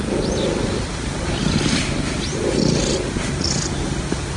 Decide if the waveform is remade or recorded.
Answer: recorded